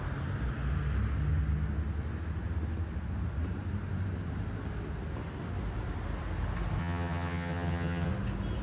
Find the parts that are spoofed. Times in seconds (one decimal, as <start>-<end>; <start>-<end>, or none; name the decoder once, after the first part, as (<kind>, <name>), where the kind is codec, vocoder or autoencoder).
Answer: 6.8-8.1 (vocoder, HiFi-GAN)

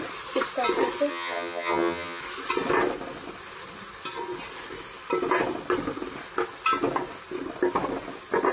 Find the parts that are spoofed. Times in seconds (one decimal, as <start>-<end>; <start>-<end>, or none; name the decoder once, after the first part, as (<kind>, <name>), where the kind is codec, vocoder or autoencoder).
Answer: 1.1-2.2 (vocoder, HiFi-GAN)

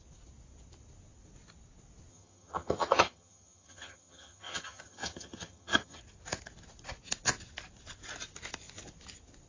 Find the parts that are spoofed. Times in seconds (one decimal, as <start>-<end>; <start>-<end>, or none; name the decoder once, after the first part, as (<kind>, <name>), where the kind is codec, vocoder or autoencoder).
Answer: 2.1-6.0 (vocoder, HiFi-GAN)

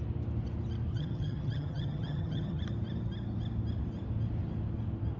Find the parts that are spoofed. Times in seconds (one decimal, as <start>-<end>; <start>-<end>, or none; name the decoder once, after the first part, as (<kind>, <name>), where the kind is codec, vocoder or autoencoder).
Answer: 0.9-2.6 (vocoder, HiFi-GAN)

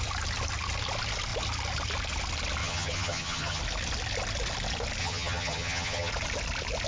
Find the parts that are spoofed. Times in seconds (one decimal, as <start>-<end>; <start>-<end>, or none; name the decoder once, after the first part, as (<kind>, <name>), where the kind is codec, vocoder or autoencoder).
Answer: 2.6-3.6 (vocoder, HiFi-GAN); 5.0-6.1

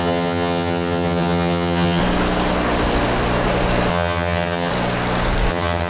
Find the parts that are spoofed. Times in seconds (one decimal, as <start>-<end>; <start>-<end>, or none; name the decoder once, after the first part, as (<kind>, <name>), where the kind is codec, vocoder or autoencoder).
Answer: 0.0-2.0 (vocoder, HiFi-GAN); 3.9-4.7; 5.5-5.9

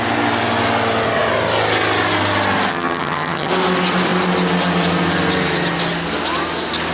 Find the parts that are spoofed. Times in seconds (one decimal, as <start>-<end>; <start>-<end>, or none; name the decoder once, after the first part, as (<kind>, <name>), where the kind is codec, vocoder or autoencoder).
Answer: 2.7-3.5 (vocoder, HiFi-GAN)

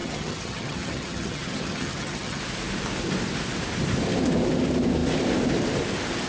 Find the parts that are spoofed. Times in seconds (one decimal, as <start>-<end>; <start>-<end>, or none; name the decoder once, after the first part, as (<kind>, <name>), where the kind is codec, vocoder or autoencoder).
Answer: 0.0-2.4 (vocoder, HiFi-GAN)